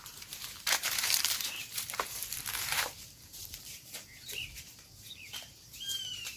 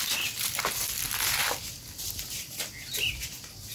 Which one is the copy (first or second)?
first